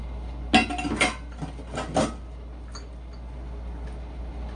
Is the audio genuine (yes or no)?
yes